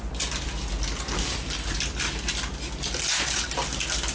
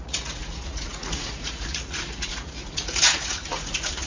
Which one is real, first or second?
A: first